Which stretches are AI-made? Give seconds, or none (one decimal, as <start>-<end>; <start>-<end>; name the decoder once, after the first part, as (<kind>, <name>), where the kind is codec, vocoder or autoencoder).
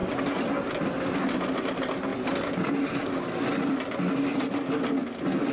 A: none